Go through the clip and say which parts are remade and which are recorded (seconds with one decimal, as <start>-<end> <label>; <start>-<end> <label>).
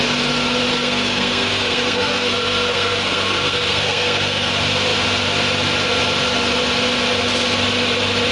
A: 0.0-0.7 recorded; 0.7-4.5 remade; 4.5-8.3 recorded